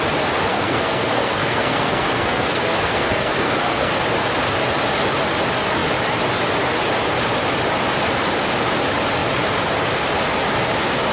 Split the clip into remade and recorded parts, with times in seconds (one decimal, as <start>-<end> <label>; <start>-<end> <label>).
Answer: 0.0-0.5 recorded; 0.5-4.0 remade; 4.0-11.1 recorded